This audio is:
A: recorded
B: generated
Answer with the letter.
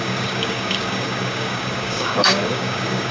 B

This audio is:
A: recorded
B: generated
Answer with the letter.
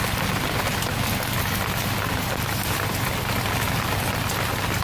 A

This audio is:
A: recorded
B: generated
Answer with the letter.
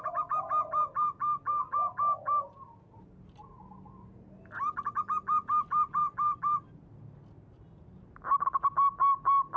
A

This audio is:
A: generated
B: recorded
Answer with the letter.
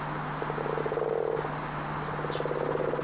B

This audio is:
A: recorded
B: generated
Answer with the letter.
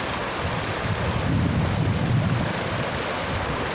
A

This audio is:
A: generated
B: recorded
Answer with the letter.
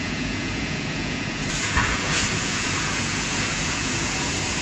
A